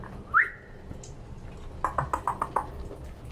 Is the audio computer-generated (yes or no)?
no